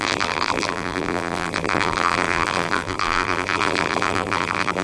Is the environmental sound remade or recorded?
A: remade